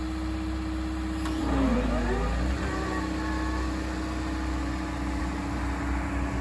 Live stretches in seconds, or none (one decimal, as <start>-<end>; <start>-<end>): 0.0-6.4